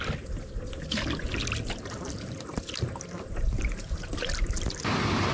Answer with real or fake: real